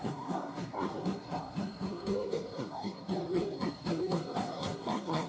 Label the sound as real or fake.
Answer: fake